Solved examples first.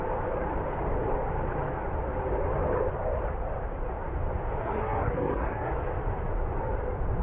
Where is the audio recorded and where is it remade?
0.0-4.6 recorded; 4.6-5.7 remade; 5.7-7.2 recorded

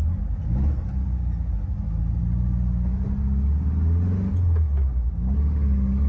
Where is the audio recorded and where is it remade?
0.0-6.1 recorded

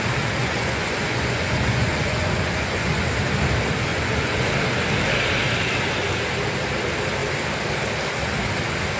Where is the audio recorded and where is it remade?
0.0-0.4 recorded; 0.4-3.1 remade; 3.1-3.9 recorded; 3.9-4.5 remade; 4.5-9.0 recorded

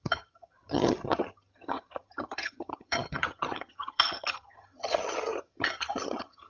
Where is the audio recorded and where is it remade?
0.0-6.5 remade